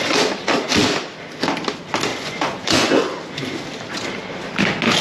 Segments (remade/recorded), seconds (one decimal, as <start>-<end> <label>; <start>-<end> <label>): 0.0-2.1 recorded; 2.1-3.0 remade; 3.0-5.0 recorded